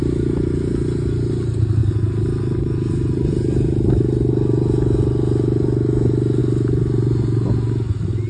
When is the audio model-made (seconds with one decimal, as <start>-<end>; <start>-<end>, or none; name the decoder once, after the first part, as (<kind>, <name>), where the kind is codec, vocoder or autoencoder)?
none